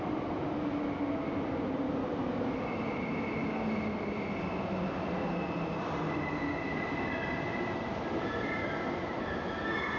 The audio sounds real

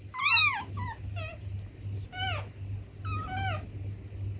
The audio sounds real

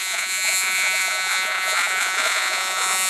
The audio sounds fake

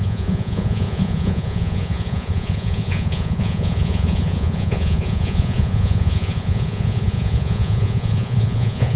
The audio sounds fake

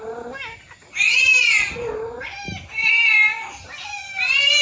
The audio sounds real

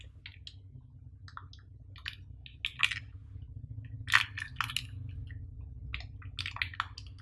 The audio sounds real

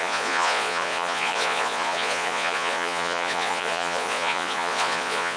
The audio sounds fake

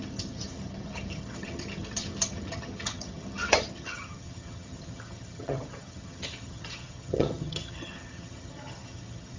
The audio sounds fake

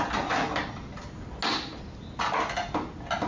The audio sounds real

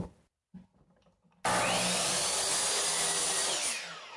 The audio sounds real